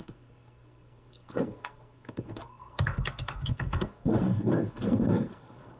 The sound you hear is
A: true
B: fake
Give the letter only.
B